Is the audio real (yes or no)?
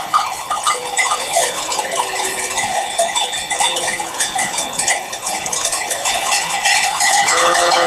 no